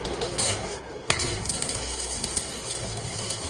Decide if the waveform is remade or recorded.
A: remade